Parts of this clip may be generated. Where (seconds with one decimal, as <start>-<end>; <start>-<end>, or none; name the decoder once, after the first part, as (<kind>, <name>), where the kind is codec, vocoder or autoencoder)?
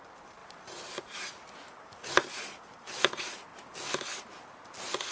none